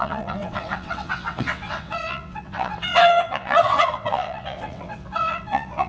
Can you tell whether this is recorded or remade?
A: remade